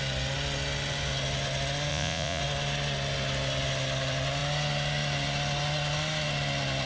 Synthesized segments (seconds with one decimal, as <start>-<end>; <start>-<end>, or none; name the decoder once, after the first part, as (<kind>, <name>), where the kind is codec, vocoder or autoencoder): 1.9-2.4 (vocoder, Vocos)